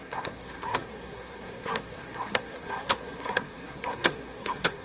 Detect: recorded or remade remade